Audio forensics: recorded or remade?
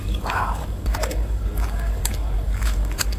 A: remade